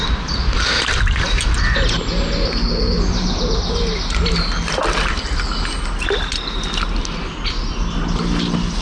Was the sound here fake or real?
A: real